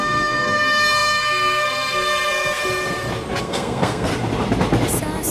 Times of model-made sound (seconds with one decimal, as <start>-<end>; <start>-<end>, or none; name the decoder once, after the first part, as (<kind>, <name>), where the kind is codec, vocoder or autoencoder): 0.0-2.6 (codec, SNAC); 3.4-4.1